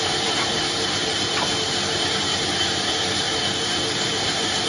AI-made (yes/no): yes